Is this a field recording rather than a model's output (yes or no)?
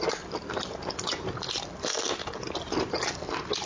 yes